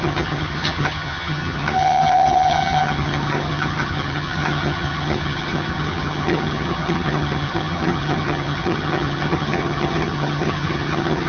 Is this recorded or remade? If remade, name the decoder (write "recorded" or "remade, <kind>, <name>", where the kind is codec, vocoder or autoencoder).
remade, vocoder, HiFi-GAN